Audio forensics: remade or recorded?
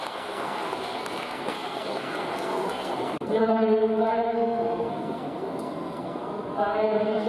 remade